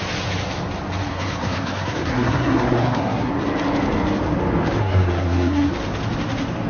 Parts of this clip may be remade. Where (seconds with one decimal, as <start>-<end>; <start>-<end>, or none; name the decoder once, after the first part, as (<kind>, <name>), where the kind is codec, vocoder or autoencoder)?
1.1-3.3 (codec, SNAC); 4.8-5.7